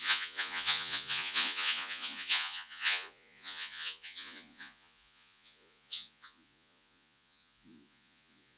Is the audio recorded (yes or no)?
no